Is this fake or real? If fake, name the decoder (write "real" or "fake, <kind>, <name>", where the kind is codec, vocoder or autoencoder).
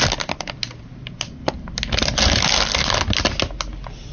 real